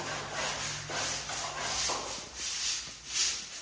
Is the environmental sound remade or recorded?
recorded